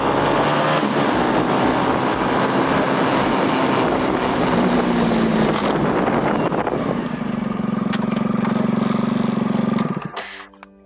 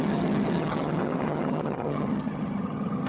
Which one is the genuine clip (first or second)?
first